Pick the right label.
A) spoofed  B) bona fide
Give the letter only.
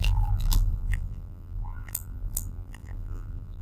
A